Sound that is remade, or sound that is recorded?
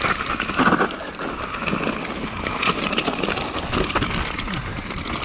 remade